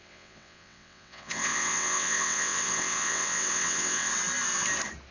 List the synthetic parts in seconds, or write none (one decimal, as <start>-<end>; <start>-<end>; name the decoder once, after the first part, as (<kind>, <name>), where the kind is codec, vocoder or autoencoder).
0.0-4.1 (vocoder, WaveNeXt)